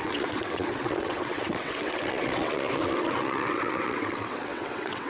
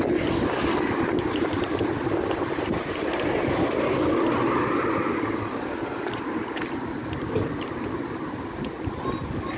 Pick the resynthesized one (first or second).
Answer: first